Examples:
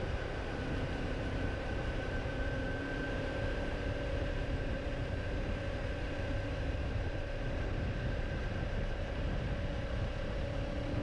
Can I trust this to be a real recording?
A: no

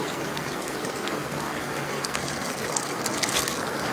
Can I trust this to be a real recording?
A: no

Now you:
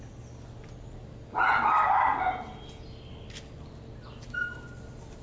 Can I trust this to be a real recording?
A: yes